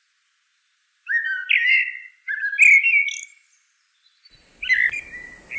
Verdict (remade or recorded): recorded